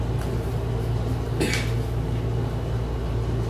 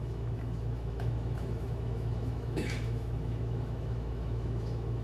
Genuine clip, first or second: first